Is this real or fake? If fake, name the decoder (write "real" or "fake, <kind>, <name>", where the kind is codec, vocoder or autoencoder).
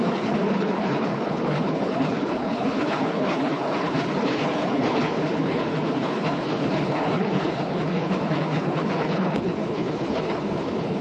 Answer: fake, codec, HILCodec